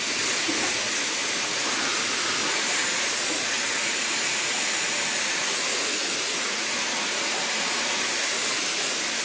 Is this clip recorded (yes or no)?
no